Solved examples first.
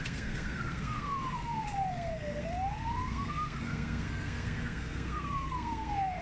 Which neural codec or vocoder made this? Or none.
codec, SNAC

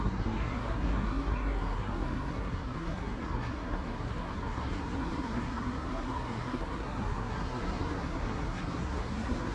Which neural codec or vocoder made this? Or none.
codec, SNAC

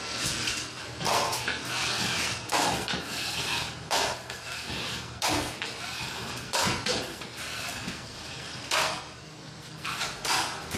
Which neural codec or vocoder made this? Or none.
codec, SNAC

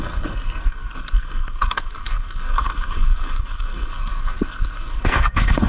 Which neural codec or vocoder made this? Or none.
codec, SNAC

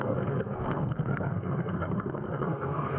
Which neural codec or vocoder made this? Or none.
codec, SNAC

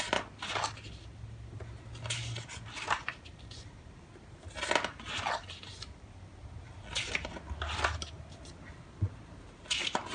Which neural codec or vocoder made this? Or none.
none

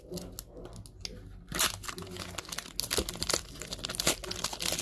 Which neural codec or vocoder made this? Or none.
none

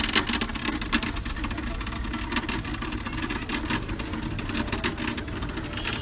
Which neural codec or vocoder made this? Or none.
none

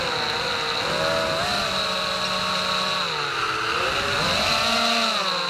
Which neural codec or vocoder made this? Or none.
none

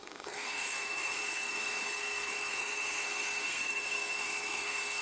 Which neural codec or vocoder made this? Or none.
codec, SNAC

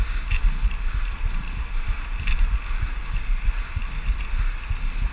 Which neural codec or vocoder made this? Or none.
none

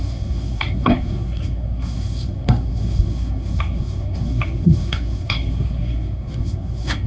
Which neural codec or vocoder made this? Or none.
codec, SNAC